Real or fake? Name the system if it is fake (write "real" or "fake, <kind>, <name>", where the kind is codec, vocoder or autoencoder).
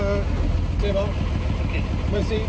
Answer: real